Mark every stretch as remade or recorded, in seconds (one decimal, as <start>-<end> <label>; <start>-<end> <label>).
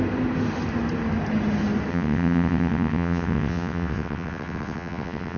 0.0-1.9 recorded; 1.9-5.4 remade